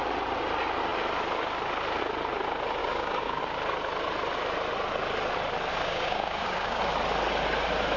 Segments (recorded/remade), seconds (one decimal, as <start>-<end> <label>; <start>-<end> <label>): 0.0-2.8 recorded; 2.8-3.4 remade; 3.4-5.7 recorded; 5.7-6.8 remade; 6.8-8.0 recorded